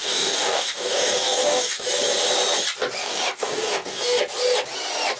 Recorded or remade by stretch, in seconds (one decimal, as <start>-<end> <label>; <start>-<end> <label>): 0.0-2.0 remade; 2.0-3.0 recorded; 3.0-4.2 remade; 4.2-5.2 recorded